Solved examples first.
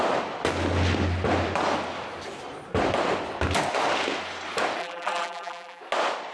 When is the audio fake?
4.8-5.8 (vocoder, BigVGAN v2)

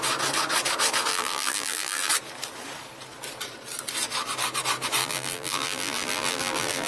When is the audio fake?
1.1-2.1 (vocoder, BigVGAN v2); 5.0-6.9

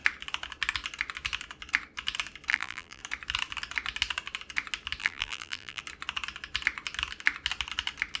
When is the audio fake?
2.5-3.0 (vocoder, BigVGAN v2); 5.0-5.8

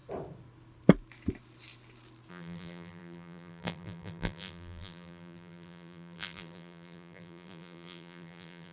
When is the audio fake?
2.3-8.7 (vocoder, BigVGAN v2)

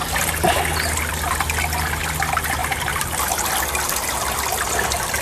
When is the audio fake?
2.6-3.4 (vocoder, BigVGAN v2)

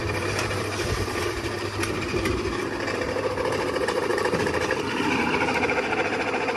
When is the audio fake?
0.0-2.6 (vocoder, BigVGAN v2)